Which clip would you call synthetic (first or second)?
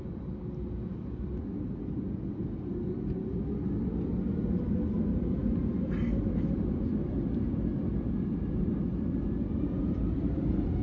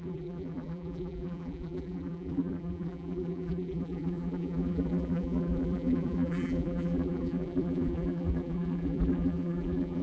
second